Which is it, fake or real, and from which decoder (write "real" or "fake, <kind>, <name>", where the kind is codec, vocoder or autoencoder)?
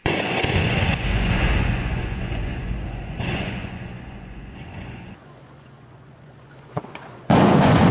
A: fake, vocoder, Vocos